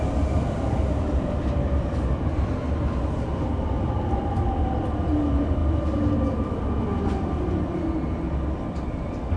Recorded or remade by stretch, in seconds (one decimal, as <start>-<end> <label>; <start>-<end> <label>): 0.0-9.4 recorded